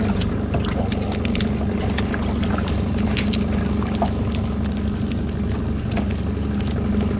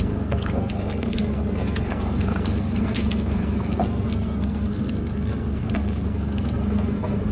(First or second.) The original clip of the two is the first